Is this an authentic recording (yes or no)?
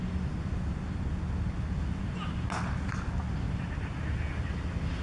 yes